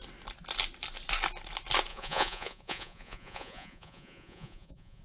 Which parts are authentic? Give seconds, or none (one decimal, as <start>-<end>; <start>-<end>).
0.0-1.9